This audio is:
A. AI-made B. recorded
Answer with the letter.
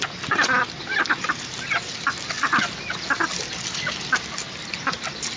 B